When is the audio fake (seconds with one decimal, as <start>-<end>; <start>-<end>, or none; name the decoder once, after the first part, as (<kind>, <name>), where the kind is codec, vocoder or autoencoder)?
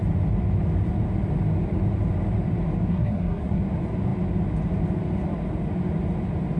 2.9-3.6 (codec, SNAC)